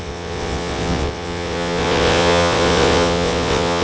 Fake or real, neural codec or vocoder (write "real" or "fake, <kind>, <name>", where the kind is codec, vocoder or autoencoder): fake, vocoder, WaveNeXt